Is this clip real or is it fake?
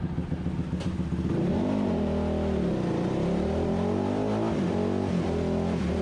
real